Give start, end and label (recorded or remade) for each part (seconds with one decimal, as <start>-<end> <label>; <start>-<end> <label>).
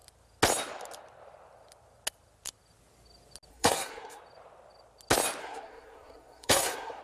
0.0-3.5 recorded; 3.5-4.2 remade; 4.2-5.4 recorded; 5.4-7.0 remade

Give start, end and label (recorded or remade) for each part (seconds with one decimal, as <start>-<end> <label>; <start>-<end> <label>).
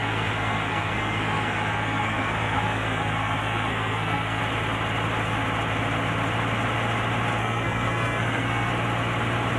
0.0-4.4 remade; 4.4-7.4 recorded; 7.4-8.7 remade; 8.7-9.6 recorded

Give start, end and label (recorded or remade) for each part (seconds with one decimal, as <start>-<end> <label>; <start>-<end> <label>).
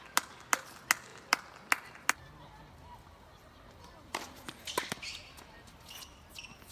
0.0-6.7 recorded